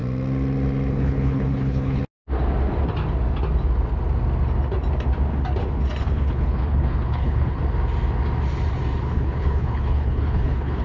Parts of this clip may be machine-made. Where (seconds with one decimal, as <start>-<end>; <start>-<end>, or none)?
0.9-2.0; 6.0-7.6; 9.0-10.8